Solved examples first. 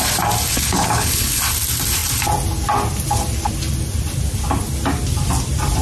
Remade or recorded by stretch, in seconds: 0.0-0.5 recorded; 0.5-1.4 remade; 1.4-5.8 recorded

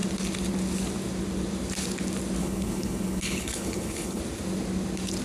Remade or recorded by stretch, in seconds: 0.0-2.4 recorded; 2.4-4.2 remade; 4.2-5.2 recorded

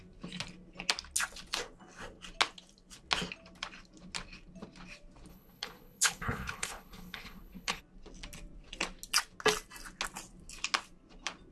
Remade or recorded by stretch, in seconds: 0.0-5.3 recorded; 5.3-7.8 remade; 7.8-11.5 recorded

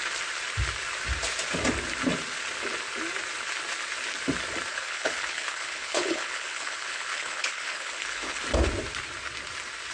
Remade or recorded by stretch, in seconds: 0.0-4.7 recorded; 4.7-8.4 remade; 8.4-9.9 recorded

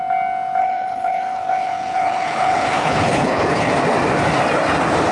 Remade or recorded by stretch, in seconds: 0.0-0.6 recorded; 0.6-3.7 remade; 3.7-5.1 recorded

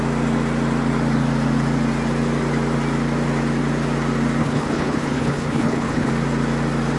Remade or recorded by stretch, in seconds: 0.0-4.4 recorded; 4.4-6.1 remade; 6.1-7.0 recorded

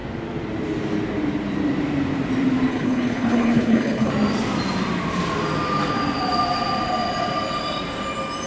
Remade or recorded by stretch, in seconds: 0.0-2.7 recorded; 2.7-4.1 remade; 4.1-8.5 recorded

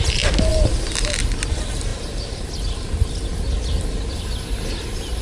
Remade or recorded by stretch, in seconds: 0.0-5.2 recorded